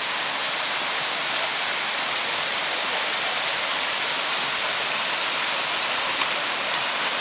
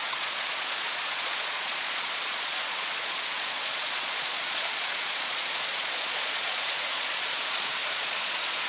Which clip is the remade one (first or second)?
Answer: second